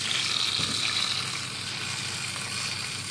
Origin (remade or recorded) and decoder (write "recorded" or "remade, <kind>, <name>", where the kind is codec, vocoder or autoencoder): recorded